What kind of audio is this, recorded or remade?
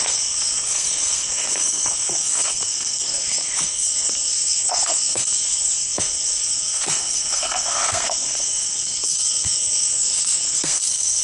remade